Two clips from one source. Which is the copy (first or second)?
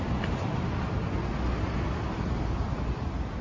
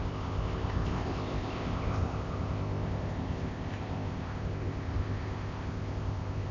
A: second